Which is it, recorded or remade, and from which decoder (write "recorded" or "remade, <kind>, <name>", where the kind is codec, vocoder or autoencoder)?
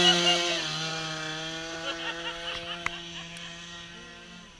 recorded